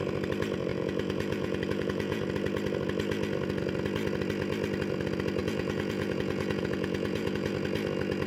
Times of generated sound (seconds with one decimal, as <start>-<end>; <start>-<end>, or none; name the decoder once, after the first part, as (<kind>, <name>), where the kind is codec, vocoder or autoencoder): 0.7-2.2 (vocoder, Vocos); 5.4-7.5